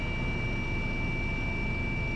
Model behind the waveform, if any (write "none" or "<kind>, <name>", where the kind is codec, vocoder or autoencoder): none